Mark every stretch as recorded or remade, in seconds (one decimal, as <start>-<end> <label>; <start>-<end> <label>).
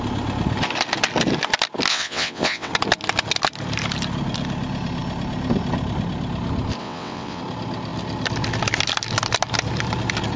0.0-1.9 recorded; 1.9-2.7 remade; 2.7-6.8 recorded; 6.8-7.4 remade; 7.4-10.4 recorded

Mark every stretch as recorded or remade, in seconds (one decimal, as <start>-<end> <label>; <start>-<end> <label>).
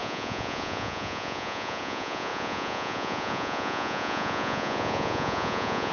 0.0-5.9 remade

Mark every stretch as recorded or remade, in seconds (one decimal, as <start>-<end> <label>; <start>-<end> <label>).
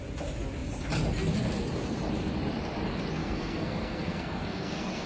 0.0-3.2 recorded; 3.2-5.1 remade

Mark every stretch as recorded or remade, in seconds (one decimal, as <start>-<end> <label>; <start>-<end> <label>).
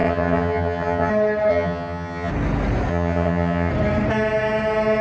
0.0-1.1 remade; 1.1-1.5 recorded; 1.5-2.3 remade; 2.3-2.9 recorded; 2.9-3.7 remade; 3.7-5.0 recorded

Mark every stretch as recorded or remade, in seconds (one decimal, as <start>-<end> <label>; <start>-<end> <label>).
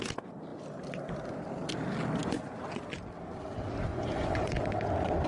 0.0-3.9 recorded; 3.9-4.6 remade; 4.6-5.3 recorded